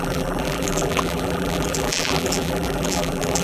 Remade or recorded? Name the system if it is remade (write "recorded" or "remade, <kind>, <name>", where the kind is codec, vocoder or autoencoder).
remade, vocoder, BigVGAN v2